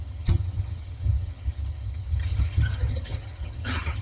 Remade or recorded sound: remade